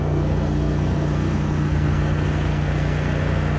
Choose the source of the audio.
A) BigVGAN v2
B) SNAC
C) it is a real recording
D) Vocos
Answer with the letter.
B